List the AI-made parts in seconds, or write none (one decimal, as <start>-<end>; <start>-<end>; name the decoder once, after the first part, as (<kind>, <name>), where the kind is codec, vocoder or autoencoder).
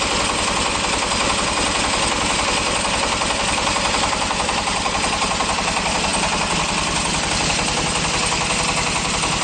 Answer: none